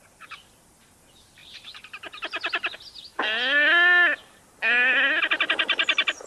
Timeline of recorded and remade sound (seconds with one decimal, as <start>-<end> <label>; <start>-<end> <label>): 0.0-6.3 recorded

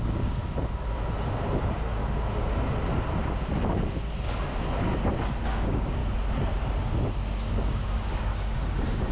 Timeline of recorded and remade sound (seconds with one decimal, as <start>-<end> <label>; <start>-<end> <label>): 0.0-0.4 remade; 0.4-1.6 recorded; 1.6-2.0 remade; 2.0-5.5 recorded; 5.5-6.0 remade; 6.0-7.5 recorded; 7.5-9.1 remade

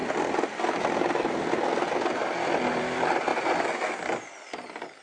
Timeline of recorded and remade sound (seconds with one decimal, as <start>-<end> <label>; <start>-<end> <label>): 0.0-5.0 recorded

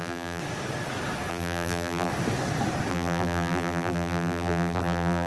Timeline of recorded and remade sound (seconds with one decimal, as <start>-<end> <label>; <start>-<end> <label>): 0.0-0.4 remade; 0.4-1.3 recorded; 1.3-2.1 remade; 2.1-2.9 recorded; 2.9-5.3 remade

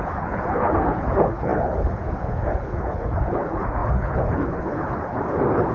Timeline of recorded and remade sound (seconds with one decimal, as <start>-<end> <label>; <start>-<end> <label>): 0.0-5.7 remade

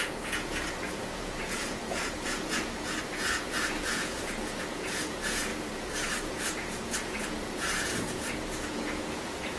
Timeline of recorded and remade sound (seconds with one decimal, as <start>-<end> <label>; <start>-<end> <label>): 0.0-5.5 remade; 5.5-6.1 recorded; 6.1-9.6 remade